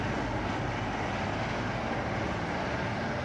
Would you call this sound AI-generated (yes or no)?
no